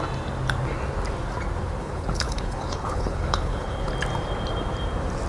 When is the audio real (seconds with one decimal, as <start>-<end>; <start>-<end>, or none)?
0.0-1.8; 3.9-5.3